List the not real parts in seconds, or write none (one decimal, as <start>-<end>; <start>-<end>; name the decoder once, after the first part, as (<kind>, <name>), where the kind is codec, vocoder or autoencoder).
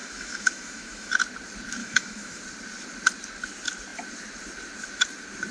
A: 0.0-1.1 (autoencoder, DAC-VAE); 1.8-2.4